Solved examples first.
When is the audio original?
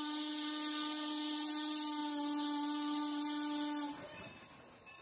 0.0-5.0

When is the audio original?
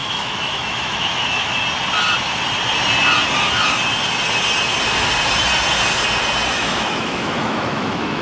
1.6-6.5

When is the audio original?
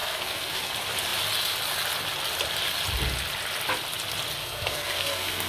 0.7-4.4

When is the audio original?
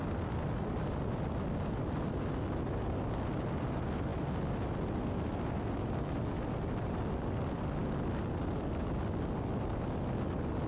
0.0-10.7